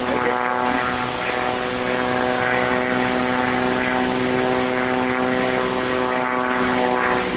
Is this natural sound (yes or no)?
yes